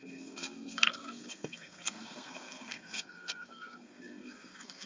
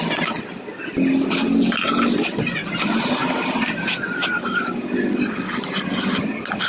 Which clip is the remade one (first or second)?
first